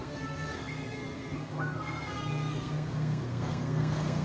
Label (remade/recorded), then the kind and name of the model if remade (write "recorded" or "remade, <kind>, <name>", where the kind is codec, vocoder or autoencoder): remade, codec, SNAC